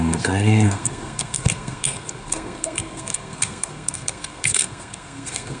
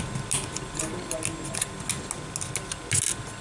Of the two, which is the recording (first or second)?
second